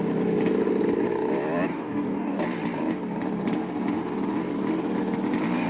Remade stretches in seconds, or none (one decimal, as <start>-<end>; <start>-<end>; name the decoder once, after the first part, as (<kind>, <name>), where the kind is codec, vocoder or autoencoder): 1.7-2.4 (codec, DAC)